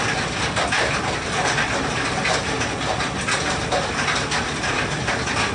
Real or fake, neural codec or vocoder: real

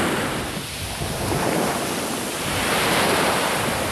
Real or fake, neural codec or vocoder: real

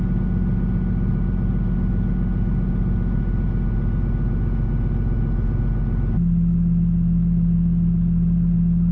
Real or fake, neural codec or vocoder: real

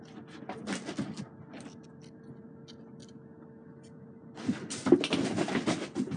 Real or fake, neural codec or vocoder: real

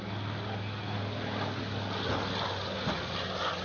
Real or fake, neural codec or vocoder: real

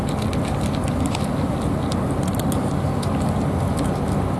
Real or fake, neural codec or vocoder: real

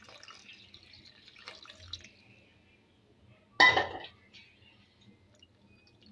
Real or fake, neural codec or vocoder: real